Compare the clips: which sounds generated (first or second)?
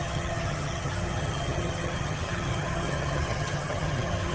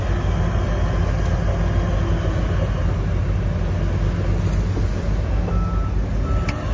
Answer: first